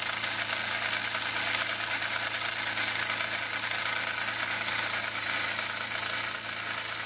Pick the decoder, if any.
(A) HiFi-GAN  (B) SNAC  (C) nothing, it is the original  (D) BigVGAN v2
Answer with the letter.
C